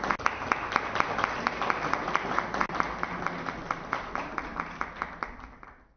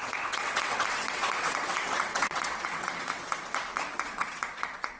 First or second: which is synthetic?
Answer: second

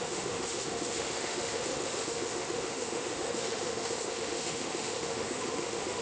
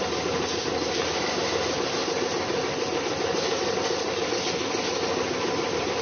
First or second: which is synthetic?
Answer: first